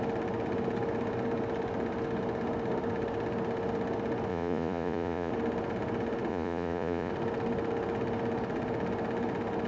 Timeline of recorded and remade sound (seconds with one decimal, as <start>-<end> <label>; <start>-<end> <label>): 0.0-4.3 recorded; 4.3-5.3 remade; 5.3-6.3 recorded; 6.3-7.1 remade; 7.1-9.7 recorded